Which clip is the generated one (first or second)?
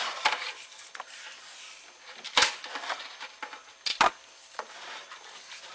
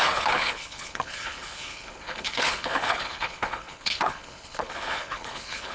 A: second